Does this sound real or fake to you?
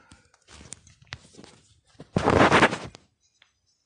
real